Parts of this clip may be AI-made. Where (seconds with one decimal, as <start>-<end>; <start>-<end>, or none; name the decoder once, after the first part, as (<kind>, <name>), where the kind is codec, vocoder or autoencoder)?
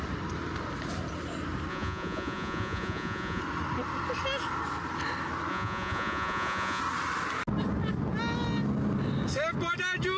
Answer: 1.7-3.4 (vocoder, Vocos); 5.5-6.8